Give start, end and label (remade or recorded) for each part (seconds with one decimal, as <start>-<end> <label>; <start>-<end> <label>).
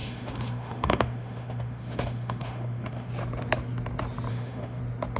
0.0-3.1 remade; 3.1-4.3 recorded; 4.3-4.8 remade; 4.8-5.2 recorded